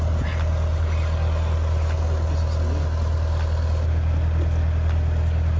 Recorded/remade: recorded